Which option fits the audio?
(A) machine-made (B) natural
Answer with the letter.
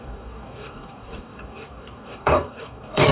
A